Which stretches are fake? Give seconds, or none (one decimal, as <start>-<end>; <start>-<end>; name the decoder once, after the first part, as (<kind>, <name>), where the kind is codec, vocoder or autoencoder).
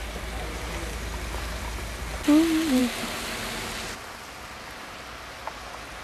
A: none